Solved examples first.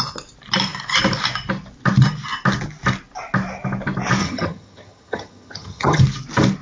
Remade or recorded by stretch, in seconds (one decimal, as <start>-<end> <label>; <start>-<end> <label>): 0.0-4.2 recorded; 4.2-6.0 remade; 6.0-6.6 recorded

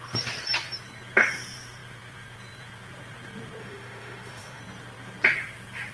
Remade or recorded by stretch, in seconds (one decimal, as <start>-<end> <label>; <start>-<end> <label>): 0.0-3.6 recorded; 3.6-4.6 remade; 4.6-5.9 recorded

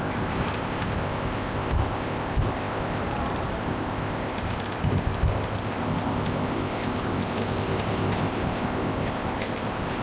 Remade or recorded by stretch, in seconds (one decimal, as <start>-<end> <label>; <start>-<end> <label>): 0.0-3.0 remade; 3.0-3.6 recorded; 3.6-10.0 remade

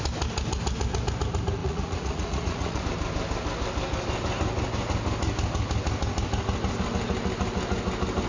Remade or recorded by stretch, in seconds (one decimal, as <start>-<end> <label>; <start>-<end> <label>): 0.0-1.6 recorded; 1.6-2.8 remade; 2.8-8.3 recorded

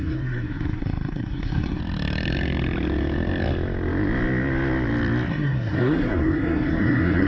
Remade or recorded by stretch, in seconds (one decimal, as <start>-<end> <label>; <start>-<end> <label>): 0.0-1.8 remade; 1.8-5.3 recorded; 5.3-7.3 remade

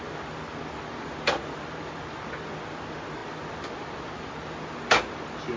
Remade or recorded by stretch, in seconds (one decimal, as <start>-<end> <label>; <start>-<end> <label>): 0.0-5.6 recorded

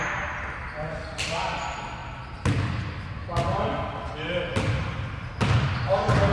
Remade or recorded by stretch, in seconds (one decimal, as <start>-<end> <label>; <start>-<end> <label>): 0.0-6.3 recorded